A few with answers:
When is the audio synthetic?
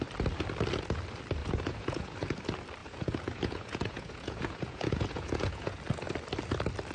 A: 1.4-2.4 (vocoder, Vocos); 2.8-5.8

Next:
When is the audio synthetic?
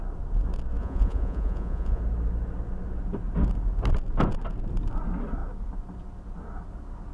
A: 0.8-2.0 (vocoder, Vocos)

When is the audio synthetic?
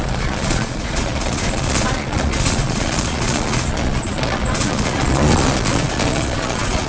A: 0.0-6.9 (vocoder, Vocos)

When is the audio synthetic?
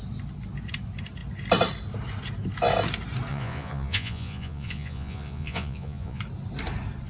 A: 3.3-6.2 (vocoder, Vocos)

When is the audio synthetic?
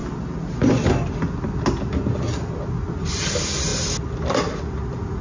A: none